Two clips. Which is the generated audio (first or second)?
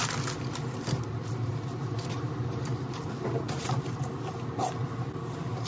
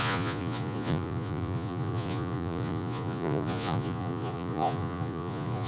second